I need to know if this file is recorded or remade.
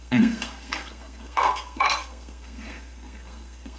remade